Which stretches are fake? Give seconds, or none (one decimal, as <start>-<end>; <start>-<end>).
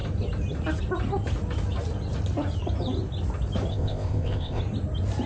3.7-4.6